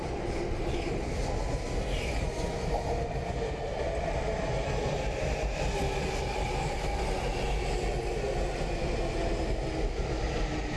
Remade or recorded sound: recorded